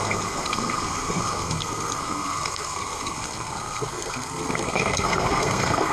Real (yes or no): no